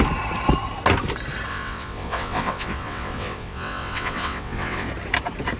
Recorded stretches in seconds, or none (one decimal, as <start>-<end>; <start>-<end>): 0.0-1.5; 4.9-5.6